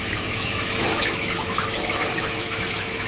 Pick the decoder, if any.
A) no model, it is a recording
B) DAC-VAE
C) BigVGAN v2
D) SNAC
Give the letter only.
B